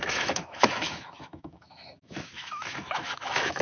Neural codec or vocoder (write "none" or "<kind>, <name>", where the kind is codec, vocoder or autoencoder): autoencoder, DAC-VAE